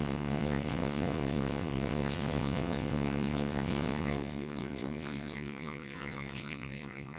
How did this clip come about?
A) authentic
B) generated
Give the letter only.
B